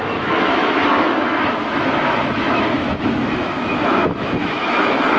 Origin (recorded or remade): remade